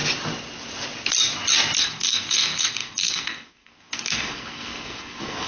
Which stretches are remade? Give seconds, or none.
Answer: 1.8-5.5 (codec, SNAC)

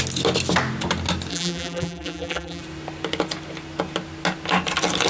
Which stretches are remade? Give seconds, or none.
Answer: 1.3-2.6 (vocoder, BigVGAN v2)

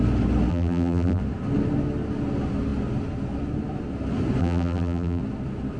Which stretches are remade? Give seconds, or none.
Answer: 0.5-1.2 (vocoder, BigVGAN v2); 4.4-5.2

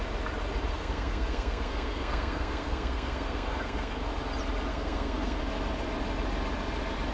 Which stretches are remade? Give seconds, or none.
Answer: 0.7-4.1 (codec, SNAC); 4.7-5.4